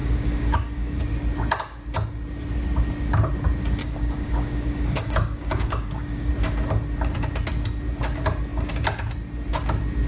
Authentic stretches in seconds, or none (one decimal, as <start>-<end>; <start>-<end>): 1.0-3.8; 6.3-10.1